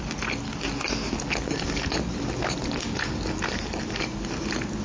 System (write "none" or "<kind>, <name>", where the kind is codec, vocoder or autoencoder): none